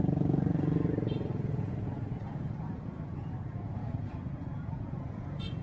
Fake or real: fake